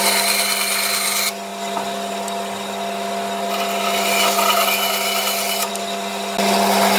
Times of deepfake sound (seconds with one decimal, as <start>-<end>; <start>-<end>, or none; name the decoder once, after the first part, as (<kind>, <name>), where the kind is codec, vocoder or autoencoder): none